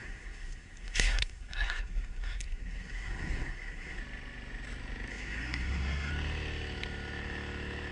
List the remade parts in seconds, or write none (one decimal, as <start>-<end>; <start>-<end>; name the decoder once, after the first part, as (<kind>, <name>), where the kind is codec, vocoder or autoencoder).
0.0-4.0 (codec, SNAC); 5.1-6.1